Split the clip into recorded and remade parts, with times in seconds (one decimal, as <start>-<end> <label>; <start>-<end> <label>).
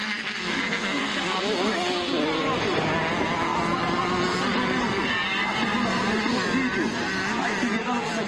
0.0-1.4 remade; 1.4-8.3 recorded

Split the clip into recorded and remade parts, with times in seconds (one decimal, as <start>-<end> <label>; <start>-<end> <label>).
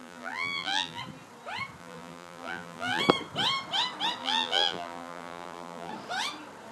0.0-1.0 remade; 1.0-1.8 recorded; 1.8-3.0 remade; 3.0-4.2 recorded; 4.2-5.9 remade; 5.9-6.7 recorded